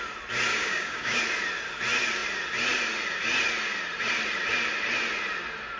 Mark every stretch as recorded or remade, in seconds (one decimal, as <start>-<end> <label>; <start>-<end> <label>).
0.0-0.5 recorded; 0.5-1.2 remade; 1.2-5.8 recorded